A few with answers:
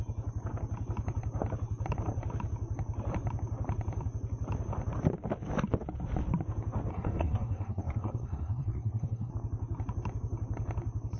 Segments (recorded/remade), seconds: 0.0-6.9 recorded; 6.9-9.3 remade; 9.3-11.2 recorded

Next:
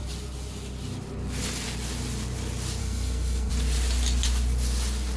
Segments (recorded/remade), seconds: 0.0-2.8 recorded; 2.8-3.5 remade; 3.5-5.2 recorded